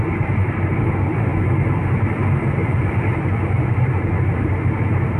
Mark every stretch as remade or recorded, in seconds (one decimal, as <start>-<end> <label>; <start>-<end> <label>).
0.0-2.6 recorded; 2.6-4.1 remade; 4.1-5.2 recorded